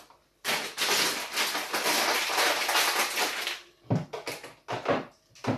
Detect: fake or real real